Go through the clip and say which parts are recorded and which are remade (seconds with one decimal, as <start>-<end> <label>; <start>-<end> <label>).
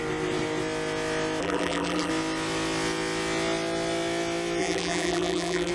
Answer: 0.0-1.4 recorded; 1.4-2.1 remade; 2.1-4.6 recorded; 4.6-5.7 remade